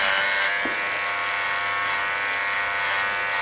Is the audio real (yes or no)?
yes